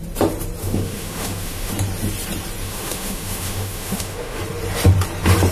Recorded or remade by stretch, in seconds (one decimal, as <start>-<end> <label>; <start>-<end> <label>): 0.0-0.6 recorded; 0.6-1.7 remade; 1.7-2.6 recorded; 2.6-4.4 remade; 4.4-5.5 recorded